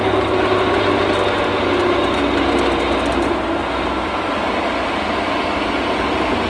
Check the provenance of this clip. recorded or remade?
recorded